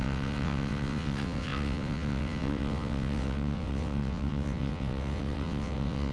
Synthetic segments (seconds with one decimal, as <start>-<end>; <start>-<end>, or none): 0.0-6.1